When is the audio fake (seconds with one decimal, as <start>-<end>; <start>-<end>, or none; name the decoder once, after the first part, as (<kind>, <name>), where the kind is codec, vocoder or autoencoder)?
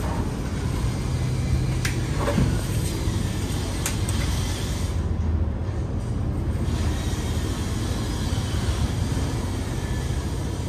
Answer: none